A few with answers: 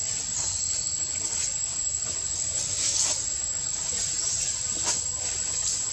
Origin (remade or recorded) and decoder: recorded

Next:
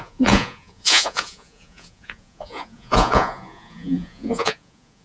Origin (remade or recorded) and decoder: remade, vocoder, Vocos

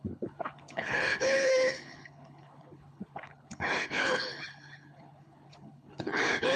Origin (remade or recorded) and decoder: remade, codec, HILCodec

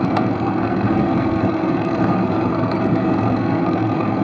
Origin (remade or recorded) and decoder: remade, codec, SNAC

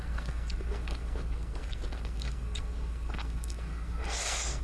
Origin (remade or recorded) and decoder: remade, codec, SNAC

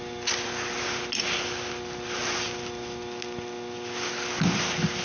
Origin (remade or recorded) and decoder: recorded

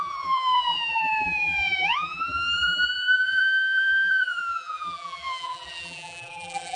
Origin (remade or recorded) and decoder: remade, vocoder, BigVGAN v2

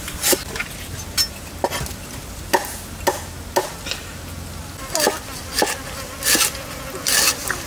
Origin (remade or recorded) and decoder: recorded